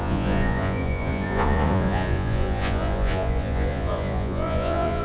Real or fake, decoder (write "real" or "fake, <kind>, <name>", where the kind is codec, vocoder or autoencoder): fake, vocoder, Vocos